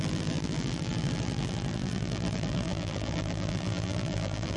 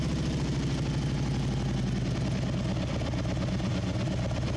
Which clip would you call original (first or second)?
second